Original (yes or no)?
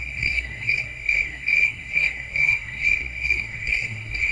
no